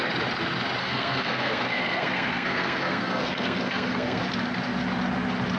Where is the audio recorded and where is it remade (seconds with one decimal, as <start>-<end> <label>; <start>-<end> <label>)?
0.0-0.8 recorded; 0.8-4.2 remade; 4.2-5.6 recorded